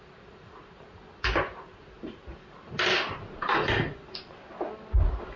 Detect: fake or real real